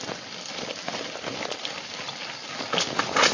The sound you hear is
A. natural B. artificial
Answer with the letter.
A